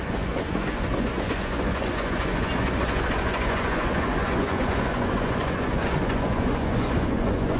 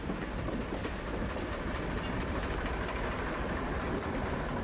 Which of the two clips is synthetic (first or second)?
first